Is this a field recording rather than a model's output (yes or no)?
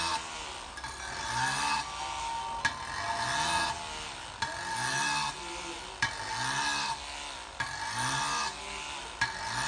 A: yes